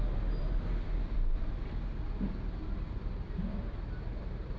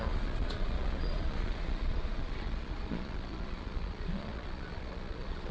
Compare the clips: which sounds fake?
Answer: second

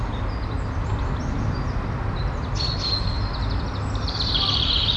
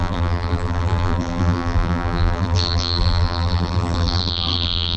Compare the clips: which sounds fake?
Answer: second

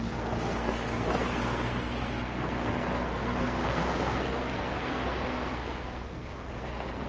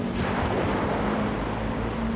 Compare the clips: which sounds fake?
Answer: first